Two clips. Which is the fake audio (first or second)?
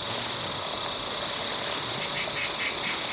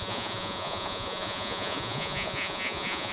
second